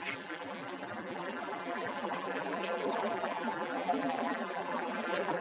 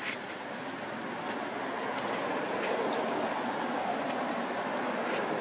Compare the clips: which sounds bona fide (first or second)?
second